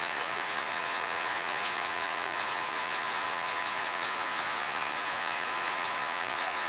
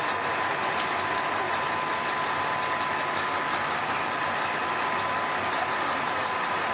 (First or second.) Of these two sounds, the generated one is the first